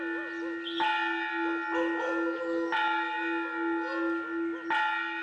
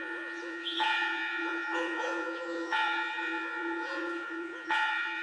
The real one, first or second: first